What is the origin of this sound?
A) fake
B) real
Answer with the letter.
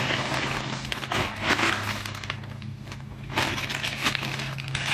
A